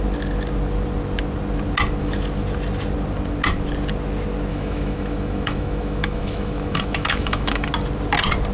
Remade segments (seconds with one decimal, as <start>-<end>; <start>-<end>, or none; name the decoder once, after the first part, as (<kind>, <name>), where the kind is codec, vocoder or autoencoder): 4.5-7.7 (autoencoder, DAC-VAE)